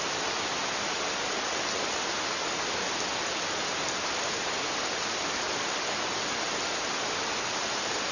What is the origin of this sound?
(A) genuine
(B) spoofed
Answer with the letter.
A